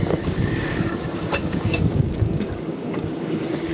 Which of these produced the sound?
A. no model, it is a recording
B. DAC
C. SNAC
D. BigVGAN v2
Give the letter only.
B